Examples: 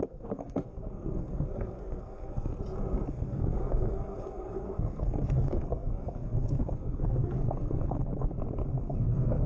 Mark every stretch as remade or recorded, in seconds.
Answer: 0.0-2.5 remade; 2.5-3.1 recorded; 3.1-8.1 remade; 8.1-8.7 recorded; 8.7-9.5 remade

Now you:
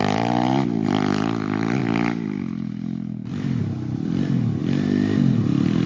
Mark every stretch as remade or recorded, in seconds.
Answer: 0.0-5.9 recorded

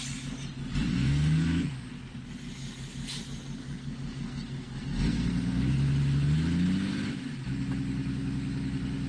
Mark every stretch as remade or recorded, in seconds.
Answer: 0.0-0.9 recorded; 0.9-1.9 remade; 1.9-3.6 recorded; 3.6-5.6 remade; 5.6-9.1 recorded

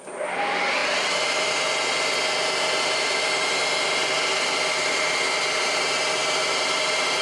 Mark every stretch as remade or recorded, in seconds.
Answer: 0.0-7.2 recorded